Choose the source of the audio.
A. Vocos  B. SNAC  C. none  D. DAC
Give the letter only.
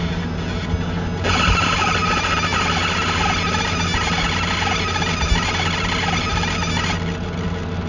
C